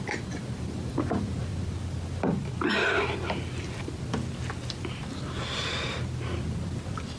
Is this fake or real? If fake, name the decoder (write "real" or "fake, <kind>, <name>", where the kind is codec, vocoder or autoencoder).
real